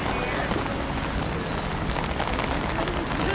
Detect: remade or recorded recorded